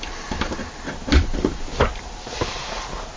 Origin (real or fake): fake